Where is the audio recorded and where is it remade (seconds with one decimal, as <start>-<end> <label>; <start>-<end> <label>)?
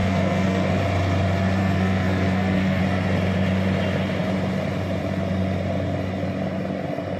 0.0-0.8 remade; 0.8-1.6 recorded; 1.6-2.8 remade; 2.8-7.2 recorded